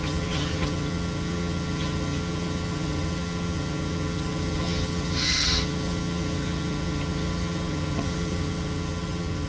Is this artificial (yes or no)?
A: yes